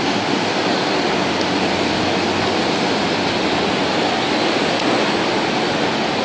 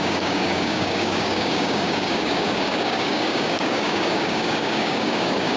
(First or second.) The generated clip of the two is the second